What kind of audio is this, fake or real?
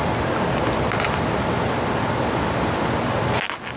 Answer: real